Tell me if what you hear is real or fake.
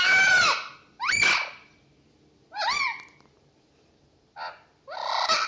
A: real